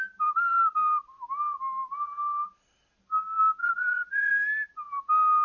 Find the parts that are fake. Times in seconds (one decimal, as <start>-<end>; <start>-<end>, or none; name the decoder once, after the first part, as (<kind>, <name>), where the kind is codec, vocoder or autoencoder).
3.6-4.3 (vocoder, Vocos)